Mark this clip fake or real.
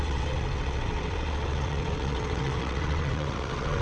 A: fake